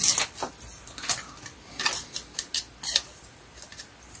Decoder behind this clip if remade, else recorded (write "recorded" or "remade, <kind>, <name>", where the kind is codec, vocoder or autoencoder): recorded